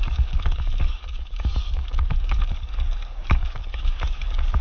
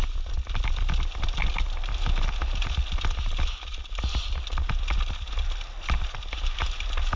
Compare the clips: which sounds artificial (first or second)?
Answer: first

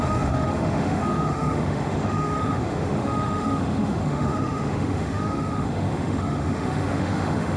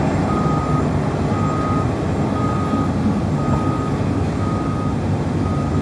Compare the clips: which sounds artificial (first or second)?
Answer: first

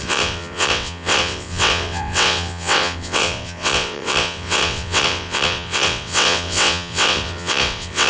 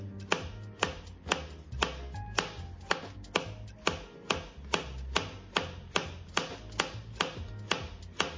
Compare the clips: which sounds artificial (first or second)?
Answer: first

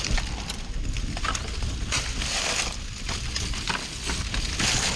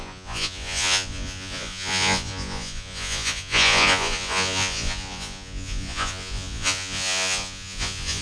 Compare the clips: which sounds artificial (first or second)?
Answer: second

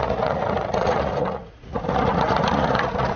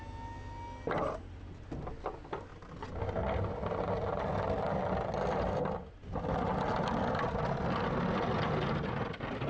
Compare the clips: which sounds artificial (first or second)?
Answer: first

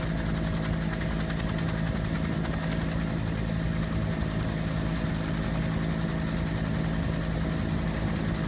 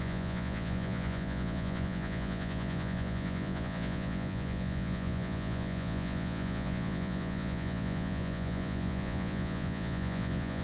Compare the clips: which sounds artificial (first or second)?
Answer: second